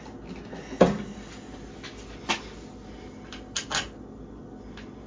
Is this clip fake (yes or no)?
no